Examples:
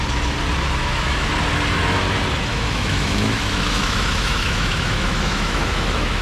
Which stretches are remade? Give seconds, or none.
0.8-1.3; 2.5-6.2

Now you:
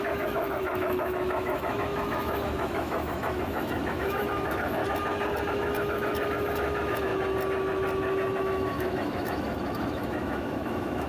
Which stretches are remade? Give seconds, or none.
0.0-4.8; 5.5-7.1; 8.4-11.1